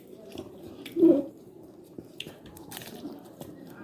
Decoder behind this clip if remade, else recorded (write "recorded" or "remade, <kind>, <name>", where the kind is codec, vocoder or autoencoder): remade, vocoder, BigVGAN v2